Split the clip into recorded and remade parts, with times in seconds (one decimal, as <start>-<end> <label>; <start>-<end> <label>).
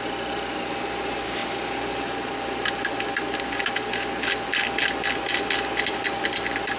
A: 0.0-6.8 recorded